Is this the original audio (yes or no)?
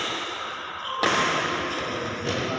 yes